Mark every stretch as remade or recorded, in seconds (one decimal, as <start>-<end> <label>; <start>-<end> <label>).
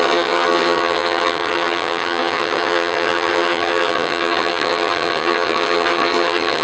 0.0-6.6 remade